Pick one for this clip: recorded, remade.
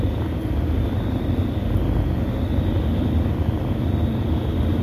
recorded